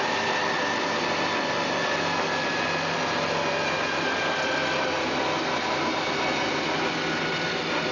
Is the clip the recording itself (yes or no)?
yes